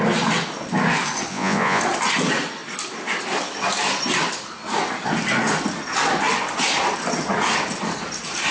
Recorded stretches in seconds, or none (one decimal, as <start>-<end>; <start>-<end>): 0.0-1.3; 1.8-8.5